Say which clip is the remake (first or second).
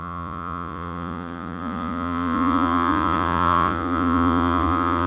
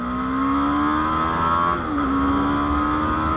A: first